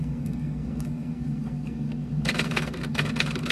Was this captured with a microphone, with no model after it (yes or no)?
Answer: no